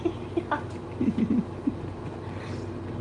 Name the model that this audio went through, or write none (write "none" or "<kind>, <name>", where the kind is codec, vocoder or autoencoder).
none